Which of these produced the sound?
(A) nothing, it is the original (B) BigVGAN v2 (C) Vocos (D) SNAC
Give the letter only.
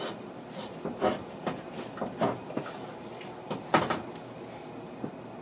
A